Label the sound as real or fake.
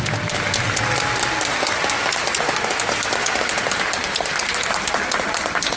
real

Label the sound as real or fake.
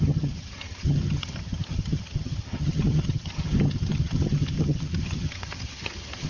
fake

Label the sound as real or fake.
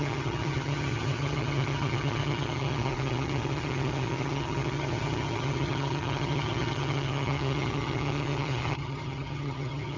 fake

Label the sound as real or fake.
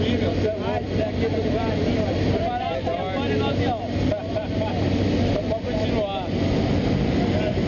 real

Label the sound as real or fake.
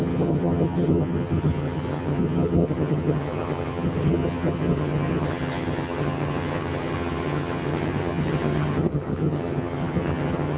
fake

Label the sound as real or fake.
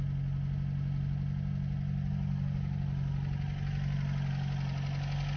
real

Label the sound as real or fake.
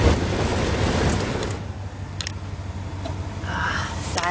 real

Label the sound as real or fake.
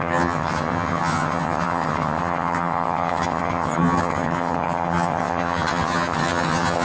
fake